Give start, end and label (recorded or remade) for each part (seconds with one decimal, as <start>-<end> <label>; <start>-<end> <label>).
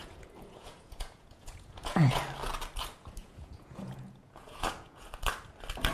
0.0-2.2 remade; 2.2-3.2 recorded; 3.2-5.1 remade; 5.1-5.9 recorded